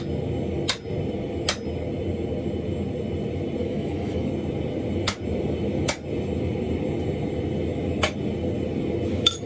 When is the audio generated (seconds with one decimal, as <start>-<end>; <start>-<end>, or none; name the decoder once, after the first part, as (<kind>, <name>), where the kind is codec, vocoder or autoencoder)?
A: 3.6-4.3 (autoencoder, DAC-VAE)